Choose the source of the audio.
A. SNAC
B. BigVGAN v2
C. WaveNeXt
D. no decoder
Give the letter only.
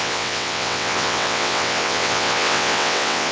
C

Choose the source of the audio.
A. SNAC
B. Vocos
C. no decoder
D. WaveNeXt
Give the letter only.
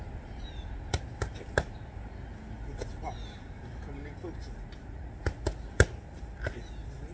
C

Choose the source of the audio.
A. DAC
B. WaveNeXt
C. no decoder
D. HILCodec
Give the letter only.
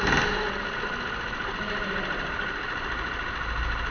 C